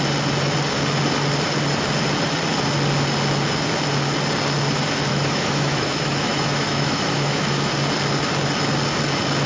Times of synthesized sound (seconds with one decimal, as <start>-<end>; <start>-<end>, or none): 5.1-7.7